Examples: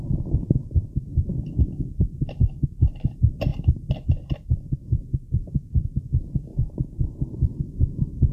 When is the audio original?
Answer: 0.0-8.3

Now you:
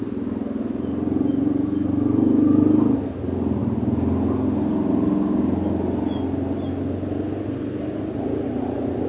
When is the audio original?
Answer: 0.0-9.1

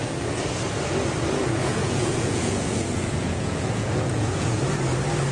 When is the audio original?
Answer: 0.0-1.4; 4.6-5.3

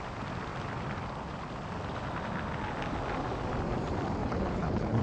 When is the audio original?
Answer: 0.0-4.2

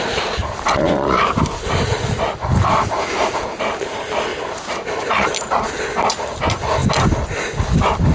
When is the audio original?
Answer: 0.0-0.4; 3.4-6.8

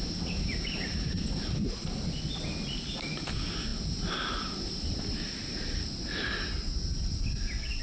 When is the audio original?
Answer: 0.0-7.8

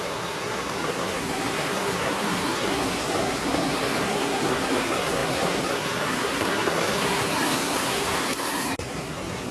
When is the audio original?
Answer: none

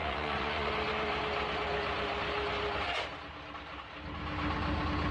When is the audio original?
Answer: 0.7-5.1